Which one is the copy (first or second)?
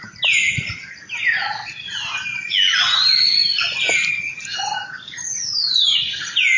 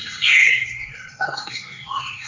second